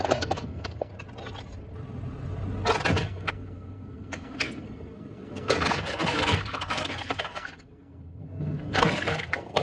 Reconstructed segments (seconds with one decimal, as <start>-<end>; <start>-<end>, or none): 0.0-0.9; 2.9-9.6